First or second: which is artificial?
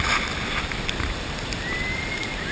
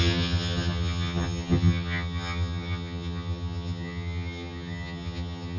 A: second